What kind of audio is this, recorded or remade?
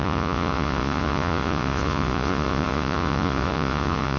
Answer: remade